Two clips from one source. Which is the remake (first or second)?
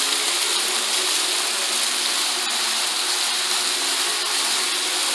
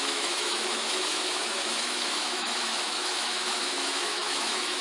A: second